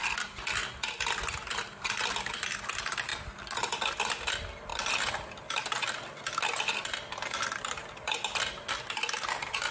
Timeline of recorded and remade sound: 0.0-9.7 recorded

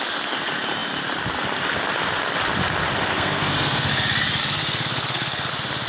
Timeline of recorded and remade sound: 0.0-3.1 recorded; 3.1-3.9 remade; 3.9-4.4 recorded; 4.4-5.5 remade; 5.5-5.9 recorded

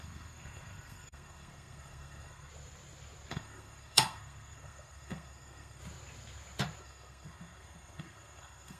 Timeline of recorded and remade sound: 0.0-2.5 remade; 2.5-3.3 recorded; 3.3-5.8 remade; 5.8-6.8 recorded; 6.8-8.8 remade

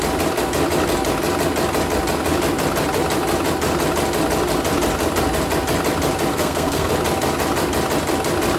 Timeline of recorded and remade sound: 0.0-6.3 recorded; 6.3-6.9 remade; 6.9-8.6 recorded

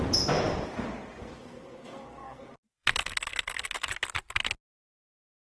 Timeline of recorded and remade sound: 0.0-1.2 recorded; 1.2-3.9 remade; 3.9-5.4 recorded